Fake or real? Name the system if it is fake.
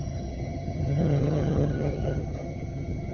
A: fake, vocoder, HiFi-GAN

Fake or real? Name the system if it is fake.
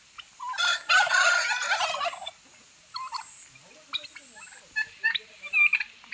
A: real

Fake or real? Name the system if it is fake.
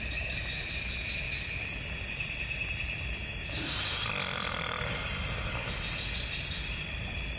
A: real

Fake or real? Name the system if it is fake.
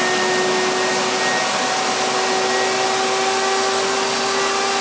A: real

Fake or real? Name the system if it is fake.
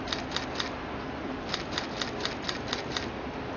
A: real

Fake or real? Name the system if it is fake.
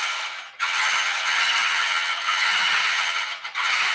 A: fake, vocoder, HiFi-GAN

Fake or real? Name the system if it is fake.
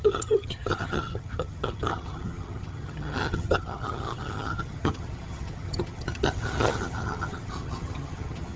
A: fake, vocoder, HiFi-GAN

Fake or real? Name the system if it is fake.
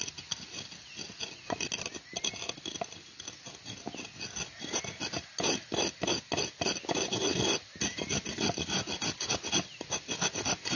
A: real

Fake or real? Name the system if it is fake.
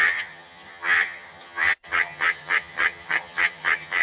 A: fake, vocoder, HiFi-GAN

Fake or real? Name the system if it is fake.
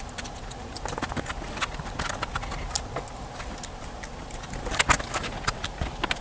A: real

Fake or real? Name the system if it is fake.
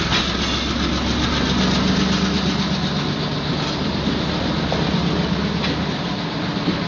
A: real